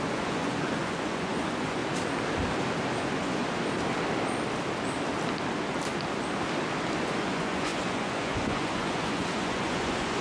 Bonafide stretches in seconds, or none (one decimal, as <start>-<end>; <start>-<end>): 1.8-3.0; 3.4-7.0